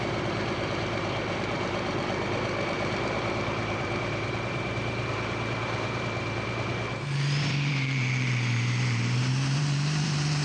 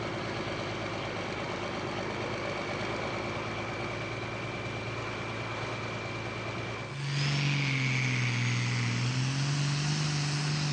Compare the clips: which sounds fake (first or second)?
first